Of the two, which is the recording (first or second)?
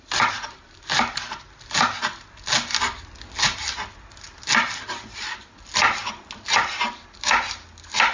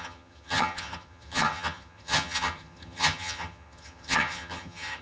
first